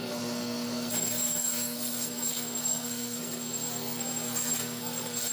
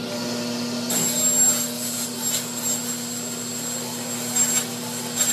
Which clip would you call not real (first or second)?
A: first